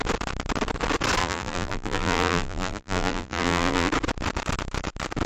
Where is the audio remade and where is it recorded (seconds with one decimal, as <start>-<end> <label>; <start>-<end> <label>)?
0.0-1.2 recorded; 1.2-3.9 remade; 3.9-5.3 recorded